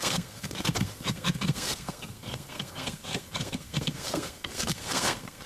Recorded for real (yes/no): no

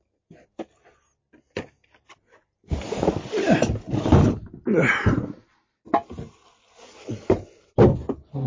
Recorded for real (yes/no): yes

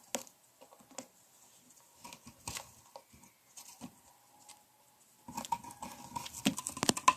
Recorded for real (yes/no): yes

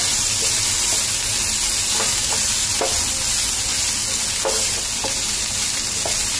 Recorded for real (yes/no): yes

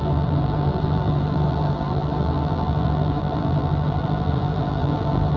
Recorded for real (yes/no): no